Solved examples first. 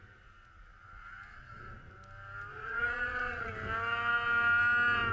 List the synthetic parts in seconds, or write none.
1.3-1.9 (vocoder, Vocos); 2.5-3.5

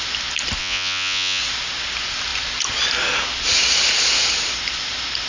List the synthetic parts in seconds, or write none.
0.6-1.4 (vocoder, Vocos)

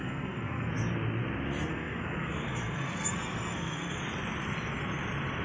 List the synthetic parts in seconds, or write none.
0.0-0.7 (codec, SNAC); 1.7-4.0

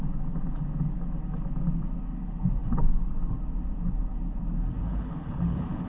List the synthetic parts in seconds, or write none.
4.8-5.9 (codec, HILCodec)

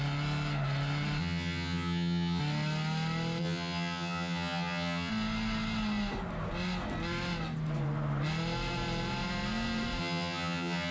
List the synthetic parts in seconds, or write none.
1.2-2.4 (vocoder, HiFi-GAN); 3.4-5.1; 10.0-10.9